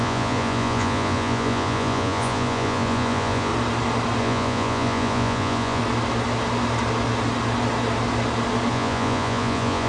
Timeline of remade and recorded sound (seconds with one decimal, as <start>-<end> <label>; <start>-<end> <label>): 0.0-3.5 remade; 3.5-4.2 recorded; 4.2-5.8 remade; 5.8-8.7 recorded; 8.7-9.9 remade